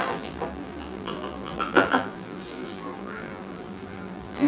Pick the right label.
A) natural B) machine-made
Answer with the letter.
B